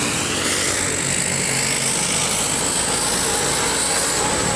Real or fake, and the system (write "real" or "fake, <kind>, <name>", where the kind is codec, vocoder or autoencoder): real